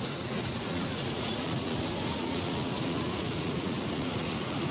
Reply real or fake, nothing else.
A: fake